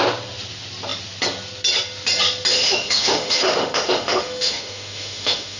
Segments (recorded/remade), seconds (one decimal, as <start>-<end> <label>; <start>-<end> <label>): 0.0-2.5 recorded; 2.5-5.6 remade